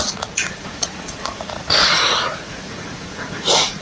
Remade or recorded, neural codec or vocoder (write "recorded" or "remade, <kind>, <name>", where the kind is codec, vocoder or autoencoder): remade, vocoder, Vocos